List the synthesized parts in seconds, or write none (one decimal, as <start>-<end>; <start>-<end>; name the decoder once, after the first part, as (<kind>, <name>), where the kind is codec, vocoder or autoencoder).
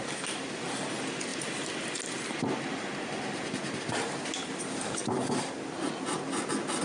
5.0-5.9 (vocoder, BigVGAN v2)